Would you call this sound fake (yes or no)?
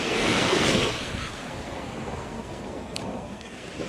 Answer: yes